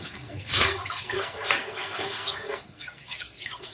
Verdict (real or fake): fake